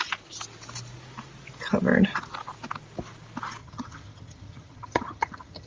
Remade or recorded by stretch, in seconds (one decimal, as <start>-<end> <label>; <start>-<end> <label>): 0.0-3.6 recorded; 3.6-5.7 remade